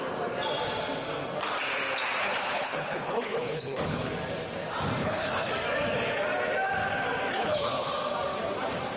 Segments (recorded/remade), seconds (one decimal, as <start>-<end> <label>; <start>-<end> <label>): 0.0-2.2 recorded; 2.2-4.1 remade; 4.1-5.0 recorded; 5.0-5.5 remade; 5.5-7.3 recorded; 7.3-7.9 remade; 7.9-9.0 recorded